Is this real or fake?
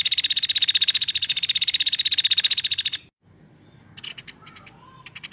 real